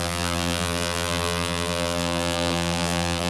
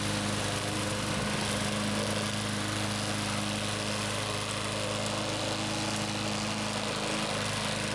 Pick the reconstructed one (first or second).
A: first